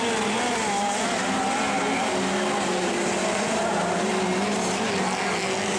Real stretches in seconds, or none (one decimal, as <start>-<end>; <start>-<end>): 0.0-2.8; 4.1-5.8